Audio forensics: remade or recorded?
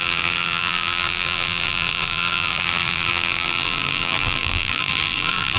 remade